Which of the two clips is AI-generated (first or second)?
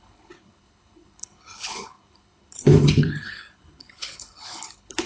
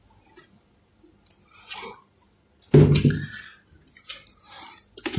first